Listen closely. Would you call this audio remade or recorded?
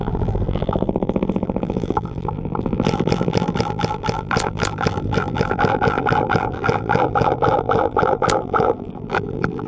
remade